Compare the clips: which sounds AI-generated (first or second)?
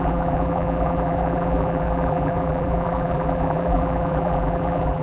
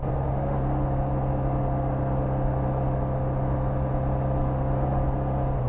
first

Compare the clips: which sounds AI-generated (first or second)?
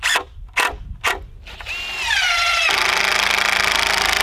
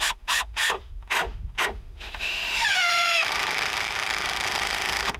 second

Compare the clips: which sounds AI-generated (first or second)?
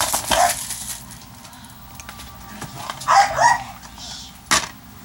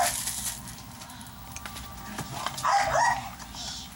second